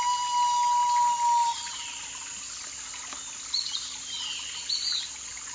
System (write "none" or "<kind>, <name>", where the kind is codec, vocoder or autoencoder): none